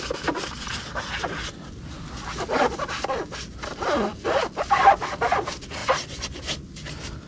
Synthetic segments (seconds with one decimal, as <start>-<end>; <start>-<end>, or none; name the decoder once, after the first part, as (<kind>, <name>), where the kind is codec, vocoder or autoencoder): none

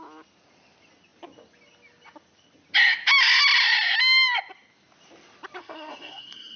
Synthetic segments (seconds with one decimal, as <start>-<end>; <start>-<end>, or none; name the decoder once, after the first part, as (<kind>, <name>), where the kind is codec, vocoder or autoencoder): 5.6-6.6 (codec, SNAC)

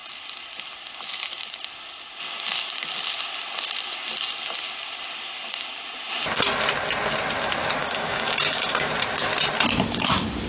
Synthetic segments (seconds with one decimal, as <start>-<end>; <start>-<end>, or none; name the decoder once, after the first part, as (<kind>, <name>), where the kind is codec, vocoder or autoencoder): 7.8-8.9 (codec, DAC)

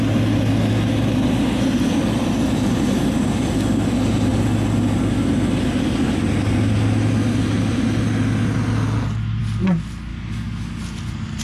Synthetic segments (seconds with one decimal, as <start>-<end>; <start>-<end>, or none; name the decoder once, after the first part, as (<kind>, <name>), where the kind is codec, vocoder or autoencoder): 10.1-10.8 (codec, DAC)

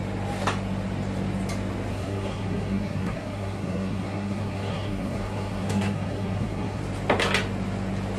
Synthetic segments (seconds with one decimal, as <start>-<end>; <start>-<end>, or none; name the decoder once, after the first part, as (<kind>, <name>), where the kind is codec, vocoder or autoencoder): 1.9-6.8 (codec, SNAC)

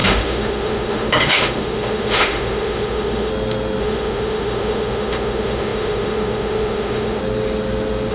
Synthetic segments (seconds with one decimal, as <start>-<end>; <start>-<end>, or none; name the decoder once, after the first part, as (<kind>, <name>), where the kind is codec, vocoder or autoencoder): 0.0-3.3 (autoencoder, DAC-VAE); 3.8-7.2